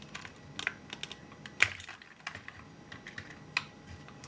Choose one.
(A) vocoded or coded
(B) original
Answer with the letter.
B